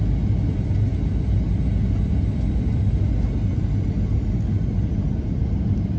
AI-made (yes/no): no